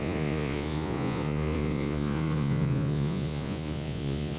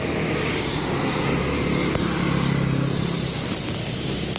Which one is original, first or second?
second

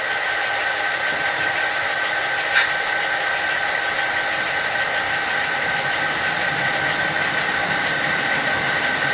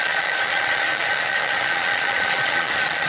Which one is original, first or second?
first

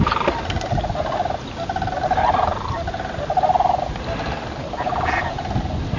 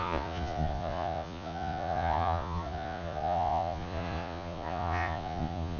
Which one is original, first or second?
first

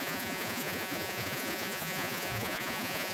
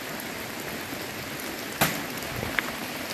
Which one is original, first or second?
second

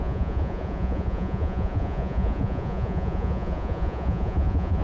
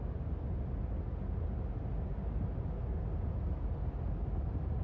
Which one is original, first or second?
second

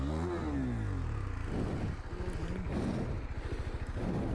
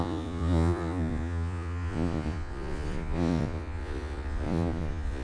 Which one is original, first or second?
first